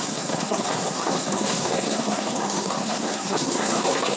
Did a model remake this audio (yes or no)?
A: yes